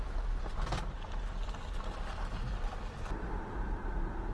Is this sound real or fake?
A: real